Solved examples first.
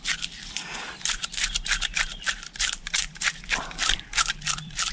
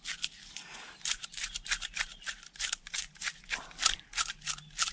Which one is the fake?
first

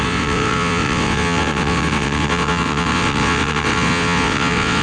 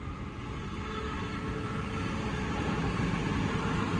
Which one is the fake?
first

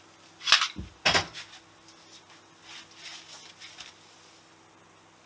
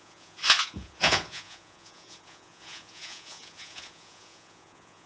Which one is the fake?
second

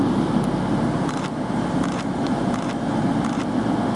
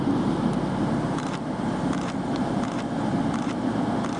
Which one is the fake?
second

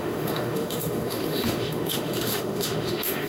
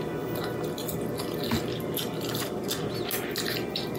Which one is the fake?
first